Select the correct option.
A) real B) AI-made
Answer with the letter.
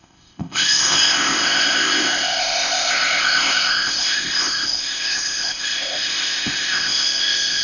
B